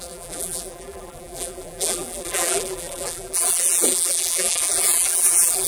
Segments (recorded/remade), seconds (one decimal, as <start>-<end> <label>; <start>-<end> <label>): 0.0-5.7 remade